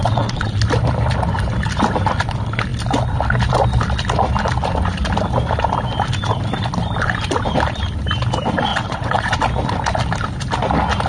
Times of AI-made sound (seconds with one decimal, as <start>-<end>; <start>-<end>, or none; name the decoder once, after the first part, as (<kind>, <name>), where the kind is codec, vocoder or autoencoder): 0.0-0.5 (vocoder, WaveNeXt); 8.7-9.4

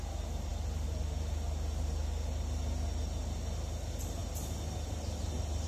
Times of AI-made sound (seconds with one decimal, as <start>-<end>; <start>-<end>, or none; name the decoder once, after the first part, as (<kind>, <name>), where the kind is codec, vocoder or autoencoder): none

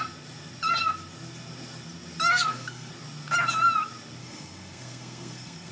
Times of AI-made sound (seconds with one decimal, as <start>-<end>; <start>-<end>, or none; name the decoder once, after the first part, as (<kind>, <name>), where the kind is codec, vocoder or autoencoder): 2.3-2.9 (codec, SNAC); 4.2-5.7

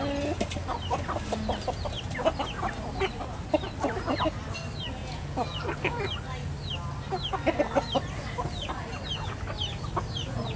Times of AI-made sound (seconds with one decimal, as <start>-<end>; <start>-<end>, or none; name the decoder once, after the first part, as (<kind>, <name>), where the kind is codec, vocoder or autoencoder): 5.0-5.6 (vocoder, Vocos)

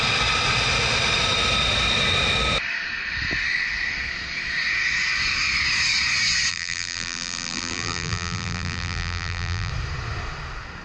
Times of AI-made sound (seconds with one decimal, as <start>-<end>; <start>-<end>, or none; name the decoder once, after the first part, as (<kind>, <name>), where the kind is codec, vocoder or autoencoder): 6.5-9.7 (vocoder, BigVGAN v2)

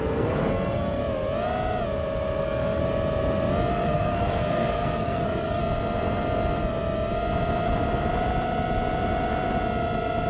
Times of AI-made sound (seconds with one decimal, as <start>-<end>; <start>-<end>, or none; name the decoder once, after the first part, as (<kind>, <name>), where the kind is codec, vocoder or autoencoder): 0.0-1.0 (codec, SNAC); 2.4-2.8; 3.7-5.6

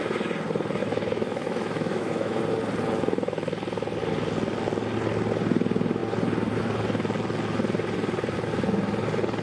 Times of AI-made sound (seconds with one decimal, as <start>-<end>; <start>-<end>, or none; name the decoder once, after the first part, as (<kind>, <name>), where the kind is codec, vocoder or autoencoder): 0.8-2.4 (autoencoder, DAC-VAE)